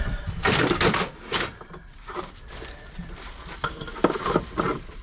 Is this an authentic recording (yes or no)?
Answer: yes